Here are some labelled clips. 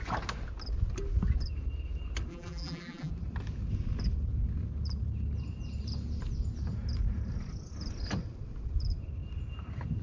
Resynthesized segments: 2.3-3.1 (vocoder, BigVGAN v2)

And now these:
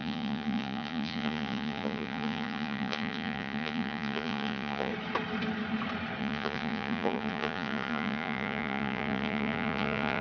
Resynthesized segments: 0.0-4.9 (vocoder, Vocos); 6.2-10.2

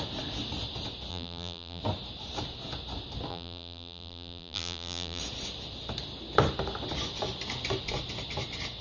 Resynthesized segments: 1.1-1.8 (vocoder, BigVGAN v2); 3.3-5.2